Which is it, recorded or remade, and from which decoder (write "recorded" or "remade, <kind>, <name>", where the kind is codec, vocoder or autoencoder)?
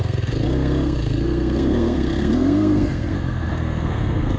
remade, codec, SNAC